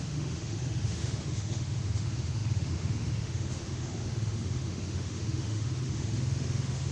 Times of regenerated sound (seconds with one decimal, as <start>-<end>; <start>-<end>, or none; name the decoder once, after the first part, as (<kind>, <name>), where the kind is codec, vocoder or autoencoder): 0.0-6.9 (autoencoder, DAC-VAE)

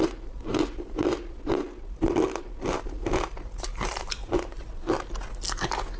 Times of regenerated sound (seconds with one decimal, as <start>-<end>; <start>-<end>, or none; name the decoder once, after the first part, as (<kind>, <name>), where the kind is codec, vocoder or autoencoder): none

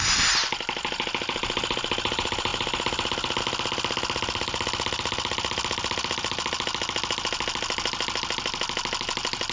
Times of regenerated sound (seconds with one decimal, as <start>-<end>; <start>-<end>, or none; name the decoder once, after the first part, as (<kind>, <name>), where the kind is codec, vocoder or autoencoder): none

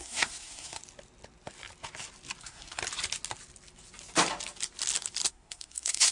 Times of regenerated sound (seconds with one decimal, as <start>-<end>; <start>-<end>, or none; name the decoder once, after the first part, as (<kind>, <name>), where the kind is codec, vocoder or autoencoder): 0.0-0.8 (codec, SNAC); 2.4-2.8; 5.3-6.1

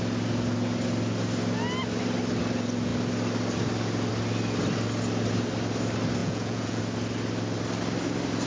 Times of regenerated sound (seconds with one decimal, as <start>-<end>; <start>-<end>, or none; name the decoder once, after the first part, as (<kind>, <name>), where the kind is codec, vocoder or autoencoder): 6.2-6.8 (vocoder, Vocos)

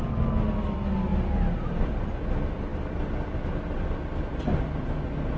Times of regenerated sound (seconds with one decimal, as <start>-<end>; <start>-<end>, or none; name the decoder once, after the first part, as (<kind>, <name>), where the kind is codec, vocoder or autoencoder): none

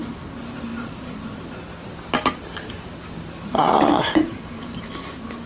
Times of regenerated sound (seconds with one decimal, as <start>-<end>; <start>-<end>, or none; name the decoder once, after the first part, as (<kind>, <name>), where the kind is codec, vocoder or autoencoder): 0.7-1.2 (vocoder, BigVGAN v2); 3.5-5.1

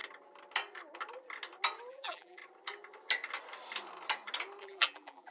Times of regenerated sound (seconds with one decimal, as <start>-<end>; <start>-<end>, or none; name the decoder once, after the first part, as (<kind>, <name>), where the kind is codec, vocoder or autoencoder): 1.9-2.4 (vocoder, BigVGAN v2); 4.6-5.3